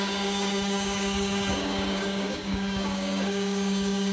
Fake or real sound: fake